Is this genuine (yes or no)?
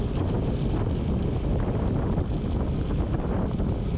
yes